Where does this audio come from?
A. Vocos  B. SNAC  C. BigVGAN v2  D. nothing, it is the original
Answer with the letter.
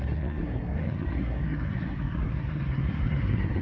B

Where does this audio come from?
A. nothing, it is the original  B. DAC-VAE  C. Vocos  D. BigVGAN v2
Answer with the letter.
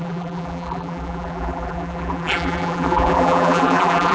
D